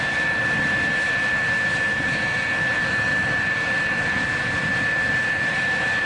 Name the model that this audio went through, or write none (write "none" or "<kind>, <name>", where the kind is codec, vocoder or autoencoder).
none